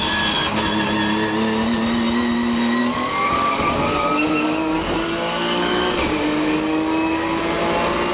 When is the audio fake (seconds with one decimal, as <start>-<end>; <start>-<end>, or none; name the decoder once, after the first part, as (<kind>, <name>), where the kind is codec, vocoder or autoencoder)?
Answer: 2.8-7.4 (codec, DAC)